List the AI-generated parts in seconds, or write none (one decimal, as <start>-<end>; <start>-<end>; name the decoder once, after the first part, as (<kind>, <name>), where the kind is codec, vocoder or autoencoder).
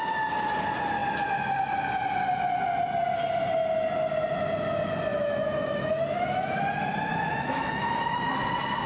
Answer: 5.1-6.6 (autoencoder, DAC-VAE); 7.1-8.3